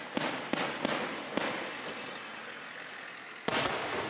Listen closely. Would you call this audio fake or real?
real